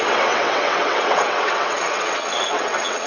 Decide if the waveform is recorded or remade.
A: remade